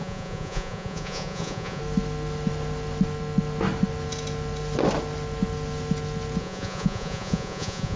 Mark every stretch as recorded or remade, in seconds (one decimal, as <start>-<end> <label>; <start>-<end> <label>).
0.0-1.8 remade; 1.8-6.4 recorded; 6.4-8.0 remade